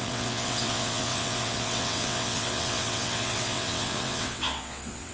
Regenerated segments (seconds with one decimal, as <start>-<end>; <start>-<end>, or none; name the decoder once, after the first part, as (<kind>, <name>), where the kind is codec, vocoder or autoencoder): 0.0-5.1 (vocoder, WaveNeXt)